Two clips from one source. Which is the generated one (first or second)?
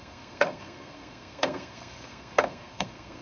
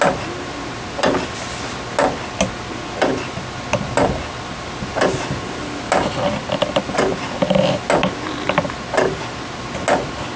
first